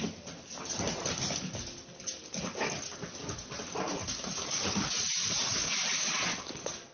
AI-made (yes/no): no